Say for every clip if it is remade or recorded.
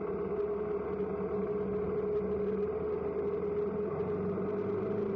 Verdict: recorded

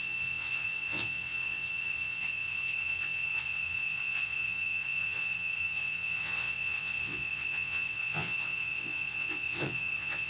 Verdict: remade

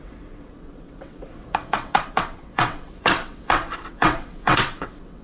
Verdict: remade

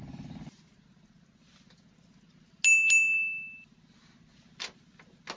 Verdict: recorded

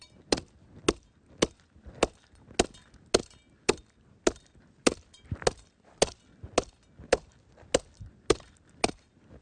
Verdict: recorded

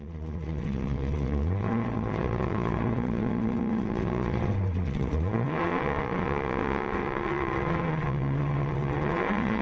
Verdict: remade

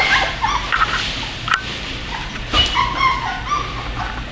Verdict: recorded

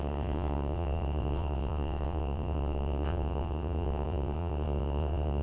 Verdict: remade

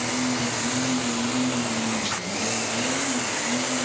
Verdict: recorded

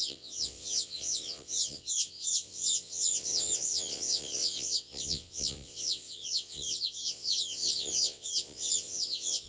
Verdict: remade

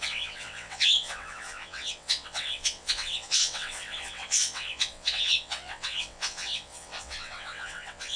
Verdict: remade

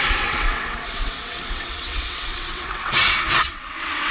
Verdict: remade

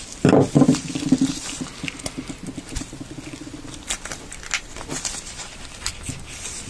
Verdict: recorded